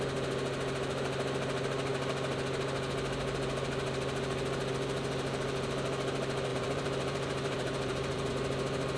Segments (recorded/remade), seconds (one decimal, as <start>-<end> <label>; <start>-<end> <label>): 0.0-6.5 recorded; 6.5-8.3 remade; 8.3-9.0 recorded